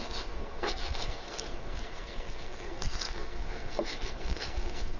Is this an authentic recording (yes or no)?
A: no